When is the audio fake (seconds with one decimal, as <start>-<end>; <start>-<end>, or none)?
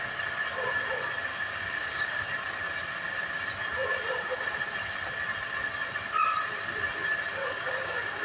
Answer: 1.3-2.3; 7.4-8.2